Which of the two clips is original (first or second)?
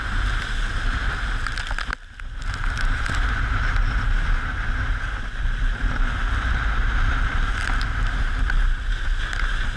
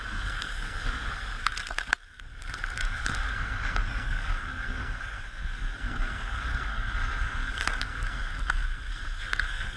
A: first